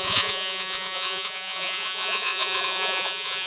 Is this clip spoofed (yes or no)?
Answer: yes